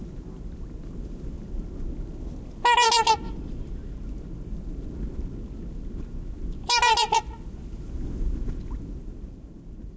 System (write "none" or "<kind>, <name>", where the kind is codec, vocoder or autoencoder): none